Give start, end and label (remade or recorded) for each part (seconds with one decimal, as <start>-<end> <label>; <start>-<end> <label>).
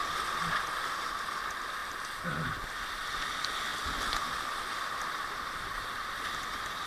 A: 0.0-6.9 recorded